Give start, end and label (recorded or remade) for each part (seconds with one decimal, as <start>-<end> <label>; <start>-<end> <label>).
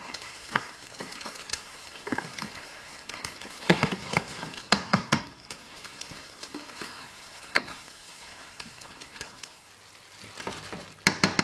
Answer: 0.0-9.7 remade; 9.7-11.4 recorded